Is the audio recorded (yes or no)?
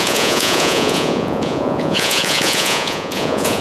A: no